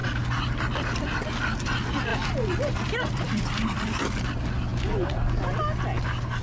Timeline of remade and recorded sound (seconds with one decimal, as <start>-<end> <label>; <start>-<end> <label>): 0.0-2.1 recorded; 2.1-4.0 remade; 4.0-6.4 recorded

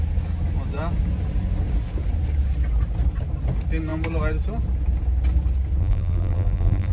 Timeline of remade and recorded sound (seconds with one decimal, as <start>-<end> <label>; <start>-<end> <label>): 0.0-5.8 recorded; 5.8-6.9 remade

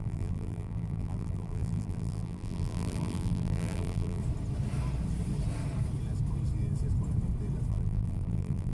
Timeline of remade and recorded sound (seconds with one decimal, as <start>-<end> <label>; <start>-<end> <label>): 0.0-4.2 remade; 4.2-7.7 recorded; 7.7-8.7 remade

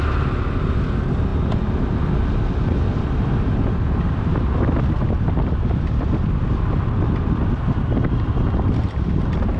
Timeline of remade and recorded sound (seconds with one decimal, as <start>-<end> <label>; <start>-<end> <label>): 0.0-9.6 recorded

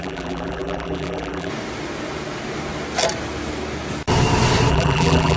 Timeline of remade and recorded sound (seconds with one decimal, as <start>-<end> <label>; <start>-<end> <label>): 0.0-1.5 remade; 1.5-4.7 recorded; 4.7-5.4 remade

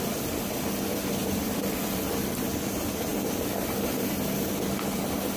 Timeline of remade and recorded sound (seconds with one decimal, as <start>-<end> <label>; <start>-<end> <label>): 0.0-1.2 recorded; 1.2-2.1 remade; 2.1-5.4 recorded

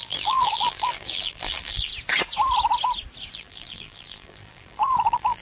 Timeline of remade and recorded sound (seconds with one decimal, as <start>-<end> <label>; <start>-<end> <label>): 0.0-1.9 remade; 1.9-3.3 recorded; 3.3-5.4 remade

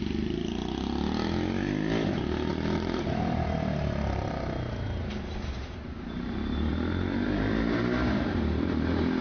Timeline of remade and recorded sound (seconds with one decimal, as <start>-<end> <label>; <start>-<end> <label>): 0.0-2.5 recorded; 2.5-6.7 remade; 6.7-9.2 recorded